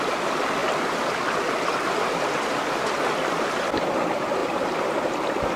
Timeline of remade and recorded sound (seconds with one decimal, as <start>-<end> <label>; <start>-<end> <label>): 0.0-4.4 recorded; 4.4-4.9 remade; 4.9-5.6 recorded